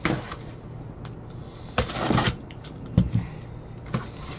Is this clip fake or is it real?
real